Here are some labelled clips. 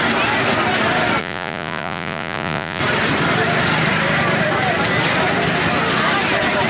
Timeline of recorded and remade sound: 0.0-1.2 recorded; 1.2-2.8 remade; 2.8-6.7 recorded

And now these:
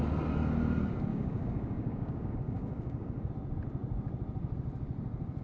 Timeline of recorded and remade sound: 0.0-1.1 recorded; 1.1-3.3 remade; 3.3-5.4 recorded

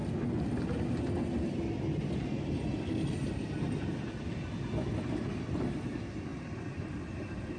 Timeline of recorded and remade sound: 0.0-6.3 recorded; 6.3-7.6 remade

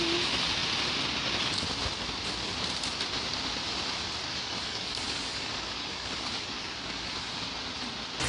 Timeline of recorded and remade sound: 0.0-4.3 recorded; 4.3-7.1 remade; 7.1-8.3 recorded

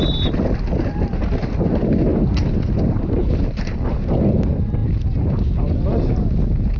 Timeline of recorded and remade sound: 0.0-6.8 recorded

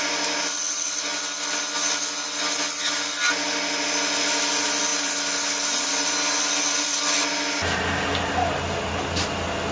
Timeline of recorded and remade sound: 0.0-9.7 recorded

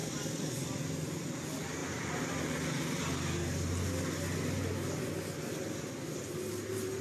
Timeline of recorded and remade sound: 0.0-0.8 remade; 0.8-1.8 recorded; 1.8-2.4 remade; 2.4-7.0 recorded